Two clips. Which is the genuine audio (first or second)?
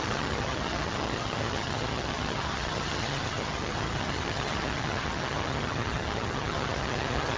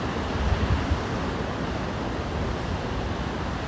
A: second